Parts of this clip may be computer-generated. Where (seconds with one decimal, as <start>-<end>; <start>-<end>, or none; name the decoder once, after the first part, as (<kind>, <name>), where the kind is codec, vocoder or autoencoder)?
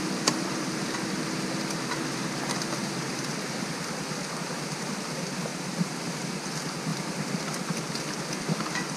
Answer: 5.5-6.3 (vocoder, BigVGAN v2); 6.9-7.7